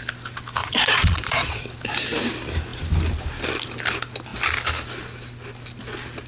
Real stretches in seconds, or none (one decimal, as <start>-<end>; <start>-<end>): 0.0-0.6; 1.6-6.3